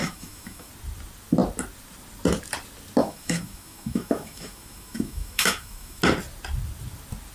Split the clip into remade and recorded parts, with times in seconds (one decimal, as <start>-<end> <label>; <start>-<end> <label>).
0.0-0.7 remade; 0.7-3.0 recorded; 3.0-6.0 remade; 6.0-7.3 recorded